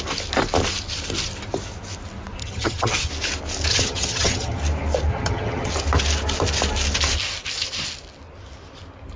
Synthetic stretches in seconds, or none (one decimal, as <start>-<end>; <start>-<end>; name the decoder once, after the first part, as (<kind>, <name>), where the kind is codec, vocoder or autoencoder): 2.4-3.1 (vocoder, HiFi-GAN); 3.7-4.6; 5.1-5.7